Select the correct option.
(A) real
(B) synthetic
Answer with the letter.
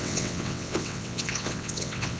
B